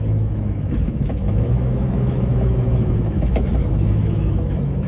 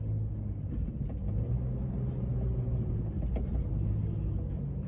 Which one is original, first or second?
second